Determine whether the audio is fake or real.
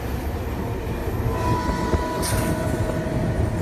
real